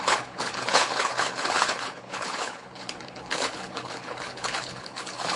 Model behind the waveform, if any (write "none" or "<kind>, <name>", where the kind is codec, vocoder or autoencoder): codec, HILCodec